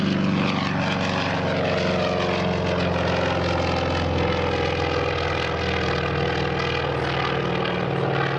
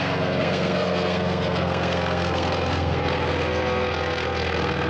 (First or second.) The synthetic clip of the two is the second